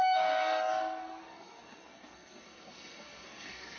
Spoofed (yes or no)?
yes